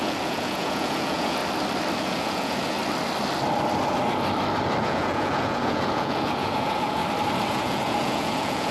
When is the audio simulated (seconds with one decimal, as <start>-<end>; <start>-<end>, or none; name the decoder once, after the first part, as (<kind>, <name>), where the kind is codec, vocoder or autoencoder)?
0.0-1.4 (vocoder, Vocos); 2.0-2.8; 4.8-7.0; 7.5-8.7